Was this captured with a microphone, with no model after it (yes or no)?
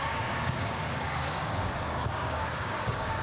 no